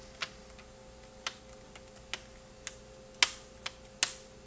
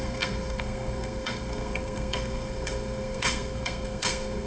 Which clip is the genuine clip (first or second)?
first